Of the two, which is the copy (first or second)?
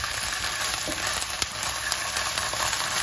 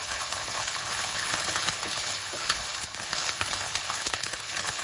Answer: second